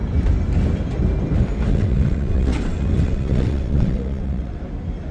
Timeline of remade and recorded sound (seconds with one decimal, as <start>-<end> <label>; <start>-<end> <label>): 0.0-1.7 recorded; 1.7-4.6 remade; 4.6-5.1 recorded